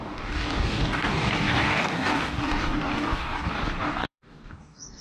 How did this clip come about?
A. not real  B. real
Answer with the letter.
A